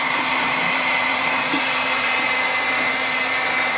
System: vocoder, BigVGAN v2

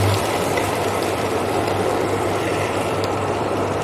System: vocoder, BigVGAN v2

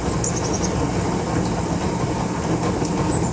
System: none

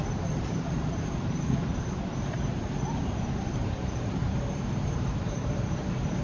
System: vocoder, BigVGAN v2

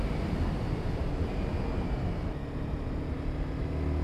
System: none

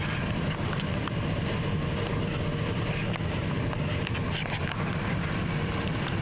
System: none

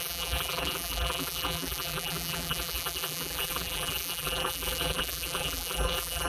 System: vocoder, BigVGAN v2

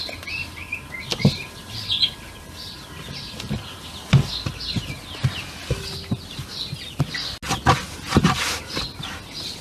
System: none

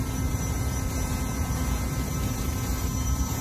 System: vocoder, BigVGAN v2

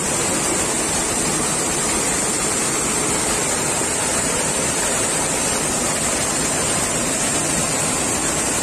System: none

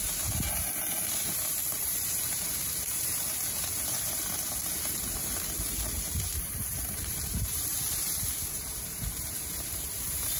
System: vocoder, BigVGAN v2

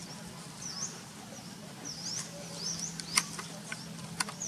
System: none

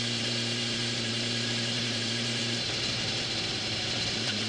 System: vocoder, BigVGAN v2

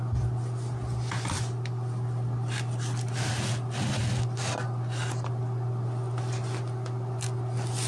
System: none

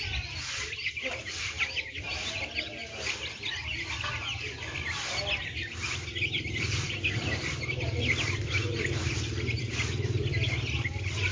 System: vocoder, BigVGAN v2